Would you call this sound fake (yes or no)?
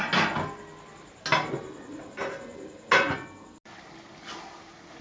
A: no